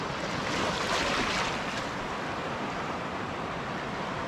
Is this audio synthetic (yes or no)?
yes